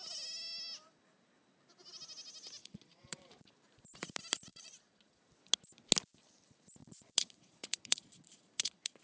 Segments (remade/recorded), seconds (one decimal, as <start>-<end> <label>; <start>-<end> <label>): 0.0-2.6 recorded; 2.6-3.3 remade; 3.3-4.5 recorded; 4.5-5.2 remade; 5.2-6.8 recorded; 6.8-9.0 remade